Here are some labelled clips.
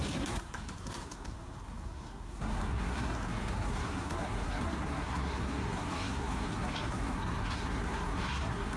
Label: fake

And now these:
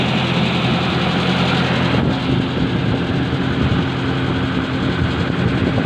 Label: real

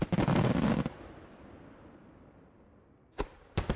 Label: fake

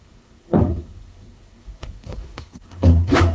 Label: fake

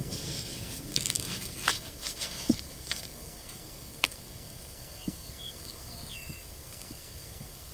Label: fake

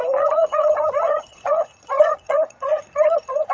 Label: fake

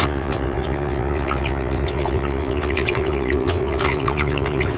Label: fake